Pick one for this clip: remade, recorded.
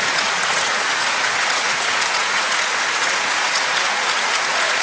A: remade